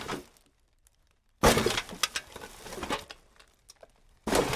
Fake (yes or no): no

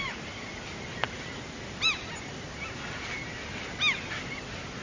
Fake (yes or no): no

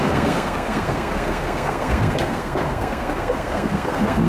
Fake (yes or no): yes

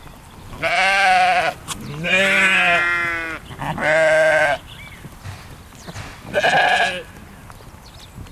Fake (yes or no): no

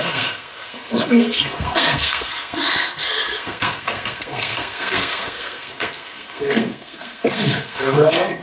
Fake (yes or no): yes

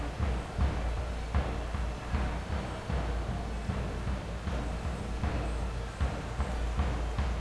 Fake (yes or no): no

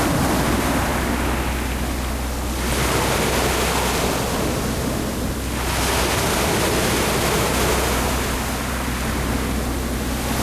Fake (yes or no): no